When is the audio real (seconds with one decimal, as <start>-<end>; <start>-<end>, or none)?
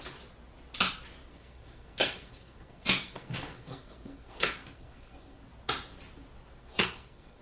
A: 0.0-1.2; 5.4-6.6